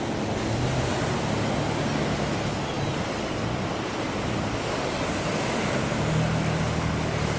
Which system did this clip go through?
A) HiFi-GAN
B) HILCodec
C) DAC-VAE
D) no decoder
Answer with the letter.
D